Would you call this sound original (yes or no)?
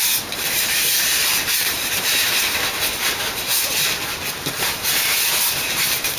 no